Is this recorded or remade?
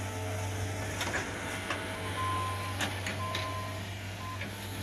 recorded